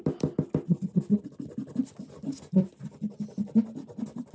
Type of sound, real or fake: real